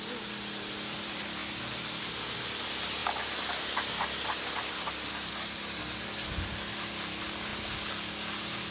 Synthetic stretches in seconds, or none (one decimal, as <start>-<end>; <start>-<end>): none